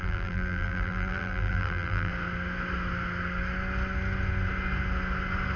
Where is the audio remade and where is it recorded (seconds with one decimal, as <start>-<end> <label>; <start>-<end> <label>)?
0.0-2.1 remade; 2.1-5.6 recorded